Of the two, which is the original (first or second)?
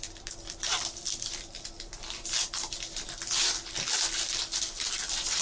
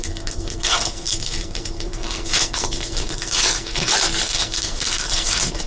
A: first